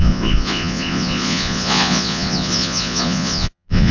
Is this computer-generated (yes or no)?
yes